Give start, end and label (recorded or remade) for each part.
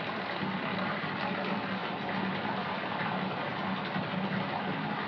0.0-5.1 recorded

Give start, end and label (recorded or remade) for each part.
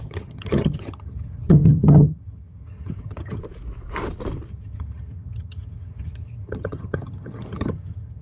0.0-3.4 remade; 3.4-4.5 recorded; 4.5-8.2 remade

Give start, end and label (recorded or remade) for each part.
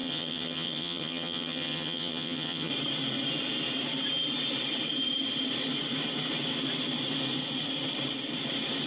0.0-2.7 remade; 2.7-8.9 recorded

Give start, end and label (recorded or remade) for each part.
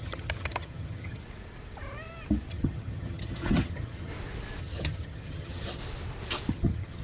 0.0-1.2 remade; 1.2-2.5 recorded; 2.5-4.1 remade; 4.1-4.6 recorded; 4.6-5.8 remade; 5.8-6.5 recorded; 6.5-7.0 remade